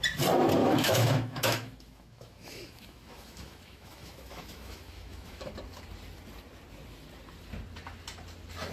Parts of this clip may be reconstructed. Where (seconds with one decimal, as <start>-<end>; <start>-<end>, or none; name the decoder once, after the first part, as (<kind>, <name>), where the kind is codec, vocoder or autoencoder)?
0.6-5.5 (autoencoder, DAC-VAE)